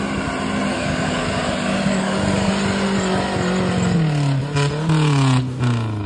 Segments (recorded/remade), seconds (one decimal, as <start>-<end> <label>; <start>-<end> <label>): 0.0-0.7 recorded; 0.7-2.5 remade; 2.5-6.1 recorded